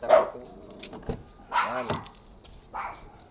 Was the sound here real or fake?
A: real